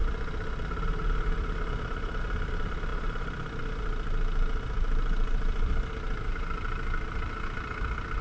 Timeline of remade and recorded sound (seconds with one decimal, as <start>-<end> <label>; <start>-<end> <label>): 0.0-8.2 recorded